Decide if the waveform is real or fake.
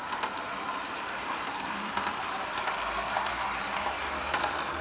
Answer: fake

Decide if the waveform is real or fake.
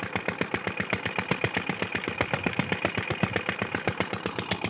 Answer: real